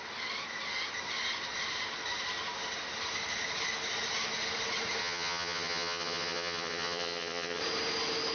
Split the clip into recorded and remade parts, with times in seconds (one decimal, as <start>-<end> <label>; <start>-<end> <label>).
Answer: 0.0-5.0 recorded; 5.0-7.6 remade; 7.6-8.3 recorded